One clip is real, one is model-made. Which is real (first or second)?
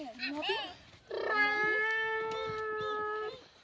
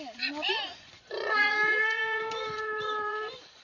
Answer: first